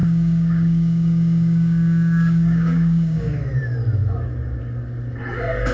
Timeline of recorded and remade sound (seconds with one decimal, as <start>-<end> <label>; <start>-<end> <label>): 0.0-3.4 remade; 3.4-5.7 recorded